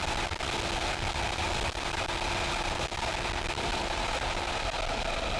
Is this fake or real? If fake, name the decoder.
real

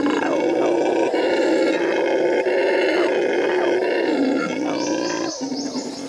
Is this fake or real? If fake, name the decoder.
real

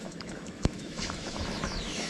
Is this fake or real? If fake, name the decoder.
fake, autoencoder, DAC-VAE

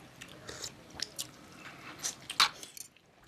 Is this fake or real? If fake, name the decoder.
real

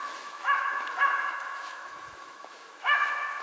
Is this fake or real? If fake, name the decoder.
fake, autoencoder, DAC-VAE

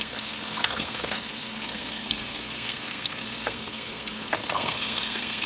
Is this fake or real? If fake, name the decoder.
fake, codec, SNAC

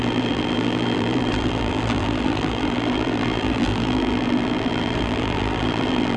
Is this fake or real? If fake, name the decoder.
fake, vocoder, BigVGAN v2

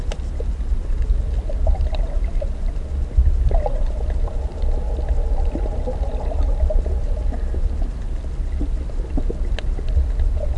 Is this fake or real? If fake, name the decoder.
real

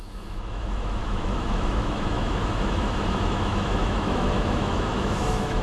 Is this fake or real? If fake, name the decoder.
fake, autoencoder, DAC-VAE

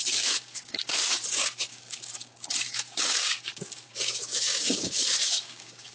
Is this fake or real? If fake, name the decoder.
fake, codec, DAC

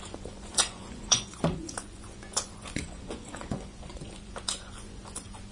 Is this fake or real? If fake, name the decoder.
fake, vocoder, Vocos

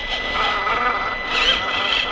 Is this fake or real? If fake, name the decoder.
real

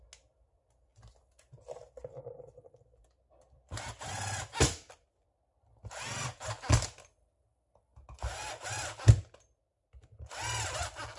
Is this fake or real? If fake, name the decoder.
real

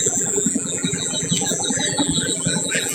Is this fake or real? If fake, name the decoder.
fake, vocoder, BigVGAN v2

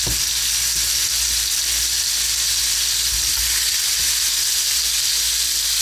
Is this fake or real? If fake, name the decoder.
real